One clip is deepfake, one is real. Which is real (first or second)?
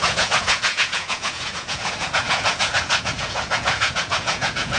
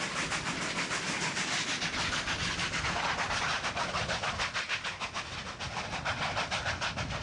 second